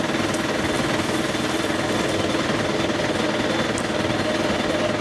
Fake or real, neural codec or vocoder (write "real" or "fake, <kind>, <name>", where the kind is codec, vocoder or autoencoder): real